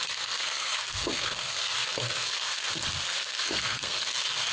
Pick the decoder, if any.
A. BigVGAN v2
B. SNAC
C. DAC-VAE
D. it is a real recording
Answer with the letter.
B